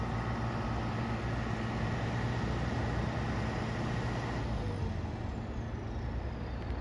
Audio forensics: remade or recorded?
recorded